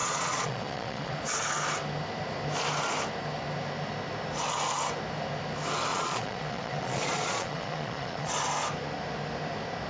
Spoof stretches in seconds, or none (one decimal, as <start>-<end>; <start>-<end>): 0.0-1.2; 5.9-8.3